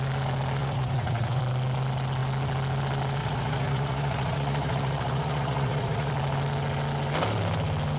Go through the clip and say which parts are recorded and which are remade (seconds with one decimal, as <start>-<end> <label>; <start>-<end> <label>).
0.0-0.6 recorded; 0.6-1.4 remade; 1.4-3.2 recorded; 3.2-6.1 remade; 6.1-8.0 recorded